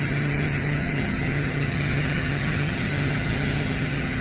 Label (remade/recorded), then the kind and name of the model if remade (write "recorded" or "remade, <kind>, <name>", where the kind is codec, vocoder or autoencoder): remade, vocoder, HiFi-GAN